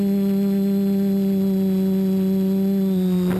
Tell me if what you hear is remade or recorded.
recorded